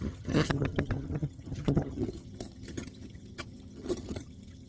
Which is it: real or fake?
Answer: fake